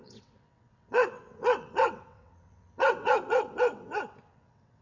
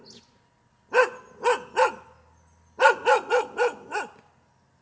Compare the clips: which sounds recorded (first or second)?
second